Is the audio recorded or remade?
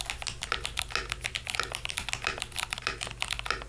recorded